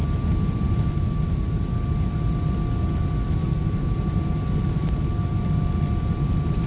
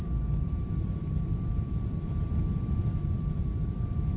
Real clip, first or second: first